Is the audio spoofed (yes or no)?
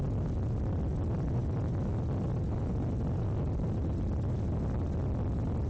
no